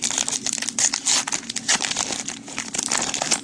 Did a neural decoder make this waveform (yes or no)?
no